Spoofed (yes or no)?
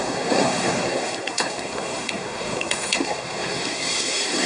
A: yes